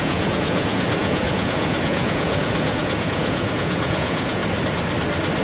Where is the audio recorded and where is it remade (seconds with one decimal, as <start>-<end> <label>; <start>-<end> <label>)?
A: 0.0-4.4 remade; 4.4-5.4 recorded